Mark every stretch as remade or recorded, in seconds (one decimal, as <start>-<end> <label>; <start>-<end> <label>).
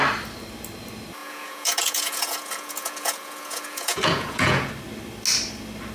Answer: 0.0-1.2 recorded; 1.2-4.7 remade; 4.7-5.9 recorded